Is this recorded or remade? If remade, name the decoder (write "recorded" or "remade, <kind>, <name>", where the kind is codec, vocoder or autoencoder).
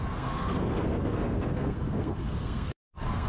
remade, codec, SNAC